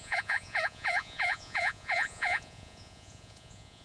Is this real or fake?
fake